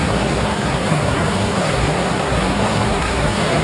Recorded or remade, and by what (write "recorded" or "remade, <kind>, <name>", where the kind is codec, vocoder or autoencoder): remade, codec, SNAC